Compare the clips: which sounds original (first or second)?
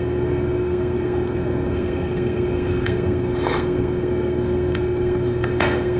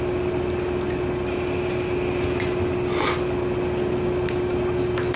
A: second